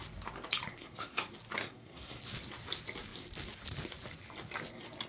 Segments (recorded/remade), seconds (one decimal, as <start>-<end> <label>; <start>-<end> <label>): 0.0-0.7 recorded; 0.7-1.2 remade; 1.2-1.6 recorded; 1.6-2.2 remade; 2.2-5.1 recorded